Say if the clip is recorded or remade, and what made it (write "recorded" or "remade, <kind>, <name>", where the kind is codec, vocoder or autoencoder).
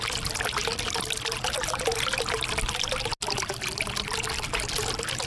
recorded